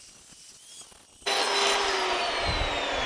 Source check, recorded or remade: recorded